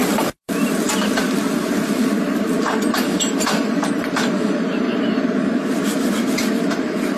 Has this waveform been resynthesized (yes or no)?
yes